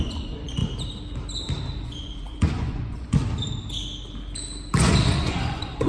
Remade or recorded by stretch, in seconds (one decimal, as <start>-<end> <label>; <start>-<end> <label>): 0.0-0.6 remade; 0.6-1.8 recorded; 1.8-3.2 remade; 3.2-4.9 recorded; 4.9-5.9 remade

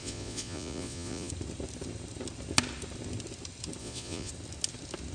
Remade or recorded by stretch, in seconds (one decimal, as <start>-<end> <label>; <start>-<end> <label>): 0.0-1.3 remade; 1.3-3.8 recorded; 3.8-4.3 remade; 4.3-5.1 recorded

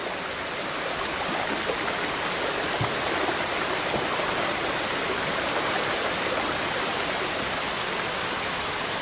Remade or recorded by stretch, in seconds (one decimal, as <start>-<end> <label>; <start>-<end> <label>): 0.0-9.0 recorded

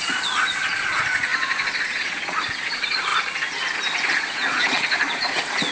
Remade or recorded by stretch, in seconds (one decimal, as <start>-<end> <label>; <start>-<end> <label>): 0.0-3.1 remade; 3.1-4.1 recorded; 4.1-5.7 remade

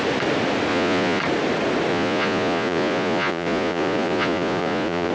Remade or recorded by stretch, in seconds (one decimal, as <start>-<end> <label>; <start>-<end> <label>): 0.0-0.7 recorded; 0.7-1.2 remade; 1.2-1.9 recorded; 1.9-5.1 remade

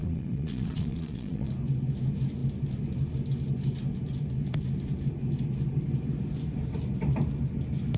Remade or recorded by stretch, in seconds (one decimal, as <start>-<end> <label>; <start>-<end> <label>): 0.0-1.5 remade; 1.5-8.0 recorded

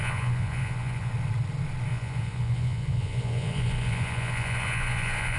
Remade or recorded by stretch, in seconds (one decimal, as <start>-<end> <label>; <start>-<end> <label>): 0.0-1.1 remade; 1.1-1.9 recorded; 1.9-5.4 remade